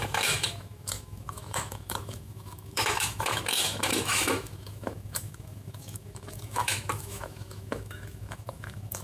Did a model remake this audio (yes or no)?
yes